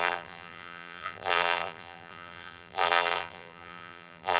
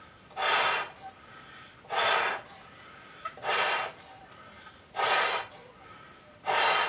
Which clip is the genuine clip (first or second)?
second